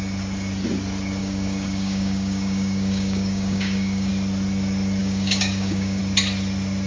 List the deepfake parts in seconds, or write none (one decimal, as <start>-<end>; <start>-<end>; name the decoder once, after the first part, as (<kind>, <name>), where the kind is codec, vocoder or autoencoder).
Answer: 1.2-4.1 (codec, DAC); 5.0-6.0